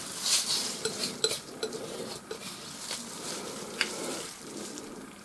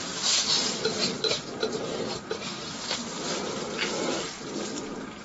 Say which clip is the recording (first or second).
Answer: second